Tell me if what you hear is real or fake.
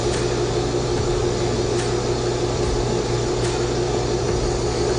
real